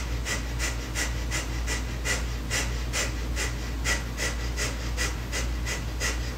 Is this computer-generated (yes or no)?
no